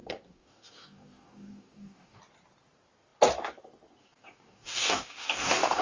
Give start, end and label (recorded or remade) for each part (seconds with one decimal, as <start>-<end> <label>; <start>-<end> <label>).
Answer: 0.0-2.2 remade; 2.2-4.0 recorded; 4.0-5.8 remade